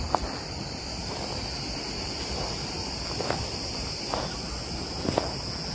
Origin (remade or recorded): recorded